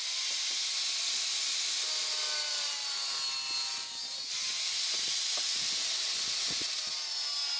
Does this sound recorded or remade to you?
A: recorded